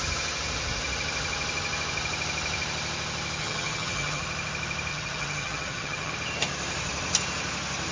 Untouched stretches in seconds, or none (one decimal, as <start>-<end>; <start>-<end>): 0.0-3.4; 4.2-4.9; 6.1-7.9